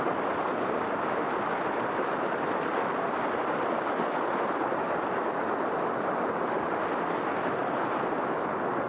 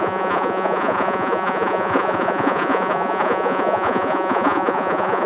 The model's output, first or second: second